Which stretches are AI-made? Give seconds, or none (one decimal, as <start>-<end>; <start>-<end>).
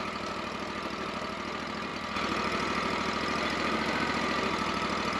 none